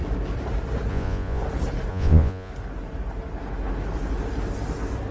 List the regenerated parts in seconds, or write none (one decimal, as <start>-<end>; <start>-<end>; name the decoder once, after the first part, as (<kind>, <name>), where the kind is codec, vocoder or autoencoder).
0.9-1.4 (vocoder, Vocos); 1.9-2.5